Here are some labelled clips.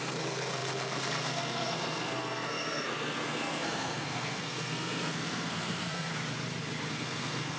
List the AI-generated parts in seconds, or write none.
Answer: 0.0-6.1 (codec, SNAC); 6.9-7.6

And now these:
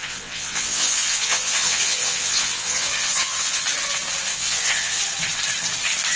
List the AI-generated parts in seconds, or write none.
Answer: 0.0-3.6 (vocoder, WaveNeXt); 4.3-5.0

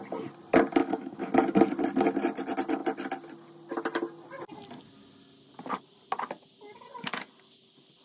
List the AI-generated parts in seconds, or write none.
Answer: 0.8-1.3 (autoencoder, DAC-VAE)

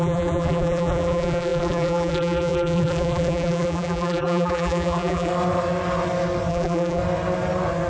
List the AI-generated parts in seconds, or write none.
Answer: 0.0-5.3 (vocoder, BigVGAN v2); 6.5-7.0